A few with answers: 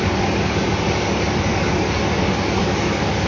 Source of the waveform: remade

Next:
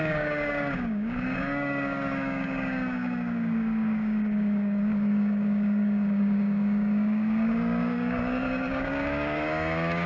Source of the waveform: remade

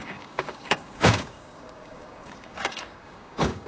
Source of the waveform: remade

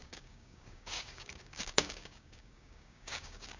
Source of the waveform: remade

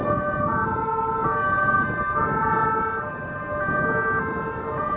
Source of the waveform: recorded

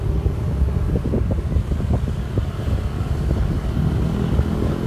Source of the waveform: remade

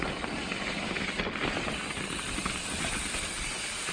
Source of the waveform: recorded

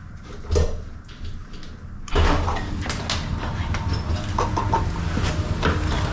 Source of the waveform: recorded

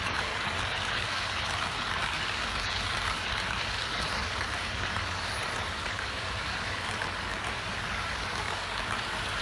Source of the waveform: remade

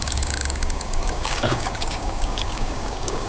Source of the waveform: remade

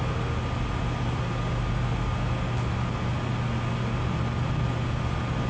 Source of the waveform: recorded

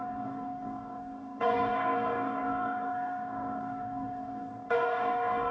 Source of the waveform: remade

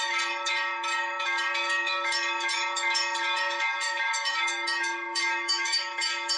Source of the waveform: remade